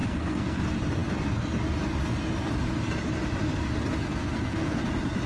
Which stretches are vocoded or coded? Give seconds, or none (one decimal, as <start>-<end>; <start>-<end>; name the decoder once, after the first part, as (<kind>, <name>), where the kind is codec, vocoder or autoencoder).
0.0-0.6 (codec, SNAC); 4.2-4.8